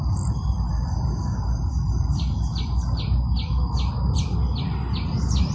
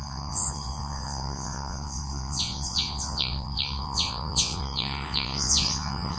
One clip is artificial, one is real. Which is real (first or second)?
first